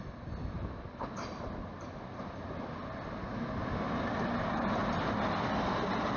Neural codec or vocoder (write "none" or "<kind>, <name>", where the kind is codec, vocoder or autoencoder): none